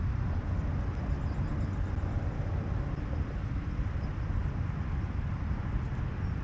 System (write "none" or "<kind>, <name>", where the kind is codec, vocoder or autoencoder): none